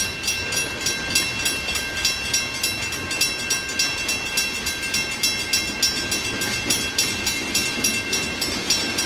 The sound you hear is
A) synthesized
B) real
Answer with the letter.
B